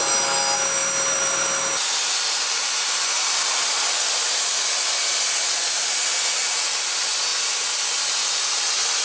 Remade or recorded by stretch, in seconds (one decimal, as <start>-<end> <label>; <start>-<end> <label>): 0.0-9.0 recorded